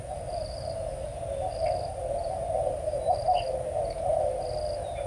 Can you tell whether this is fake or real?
real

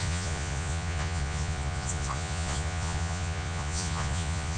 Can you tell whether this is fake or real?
fake